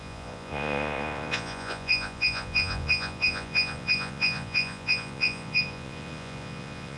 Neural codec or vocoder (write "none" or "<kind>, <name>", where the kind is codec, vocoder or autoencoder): vocoder, Vocos